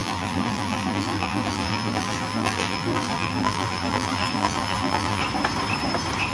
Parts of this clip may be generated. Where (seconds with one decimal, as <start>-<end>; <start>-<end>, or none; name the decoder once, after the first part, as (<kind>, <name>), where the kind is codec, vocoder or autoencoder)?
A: 0.0-5.2 (vocoder, BigVGAN v2)

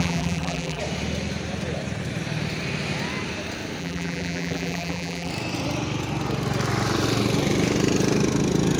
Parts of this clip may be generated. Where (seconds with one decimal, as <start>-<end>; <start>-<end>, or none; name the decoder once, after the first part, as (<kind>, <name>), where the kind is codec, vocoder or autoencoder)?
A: 0.0-0.8 (vocoder, BigVGAN v2); 3.8-5.3

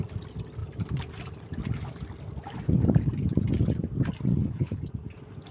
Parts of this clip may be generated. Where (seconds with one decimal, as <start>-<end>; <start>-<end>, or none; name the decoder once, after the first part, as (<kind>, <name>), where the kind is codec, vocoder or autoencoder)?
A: 4.3-4.8 (codec, HILCodec)

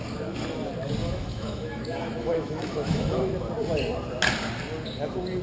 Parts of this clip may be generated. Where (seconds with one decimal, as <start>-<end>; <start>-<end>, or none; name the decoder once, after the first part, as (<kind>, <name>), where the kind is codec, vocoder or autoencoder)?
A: 1.0-3.3 (autoencoder, DAC-VAE)

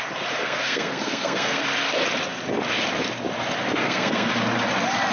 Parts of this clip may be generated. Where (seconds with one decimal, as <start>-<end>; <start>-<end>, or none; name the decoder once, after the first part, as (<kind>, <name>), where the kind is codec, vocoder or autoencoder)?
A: 0.4-1.6 (codec, SNAC); 3.8-4.3

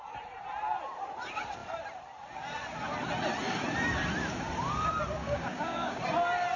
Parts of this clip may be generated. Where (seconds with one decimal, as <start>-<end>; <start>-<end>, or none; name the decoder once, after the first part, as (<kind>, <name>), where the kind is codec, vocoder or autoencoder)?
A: 5.2-6.0 (codec, DAC)

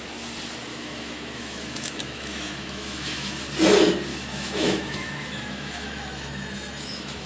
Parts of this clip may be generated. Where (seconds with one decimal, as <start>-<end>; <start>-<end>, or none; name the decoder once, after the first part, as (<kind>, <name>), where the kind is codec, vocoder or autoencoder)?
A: 0.7-3.4 (autoencoder, DAC-VAE); 4.1-7.3